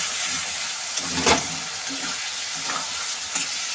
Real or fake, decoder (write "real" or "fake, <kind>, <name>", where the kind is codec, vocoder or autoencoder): real